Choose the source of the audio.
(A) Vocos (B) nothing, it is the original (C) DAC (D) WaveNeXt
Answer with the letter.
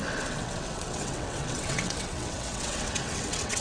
D